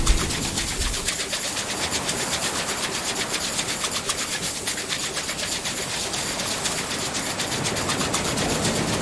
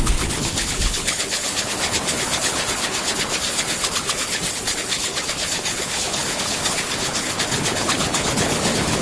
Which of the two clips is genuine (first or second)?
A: first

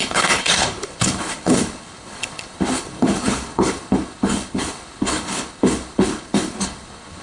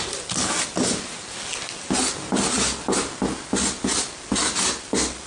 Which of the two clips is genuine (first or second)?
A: second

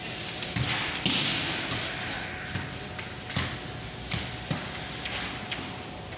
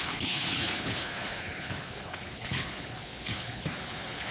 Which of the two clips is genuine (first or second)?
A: first